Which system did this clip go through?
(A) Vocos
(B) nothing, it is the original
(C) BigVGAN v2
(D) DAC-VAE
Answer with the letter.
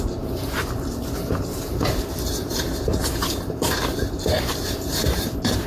C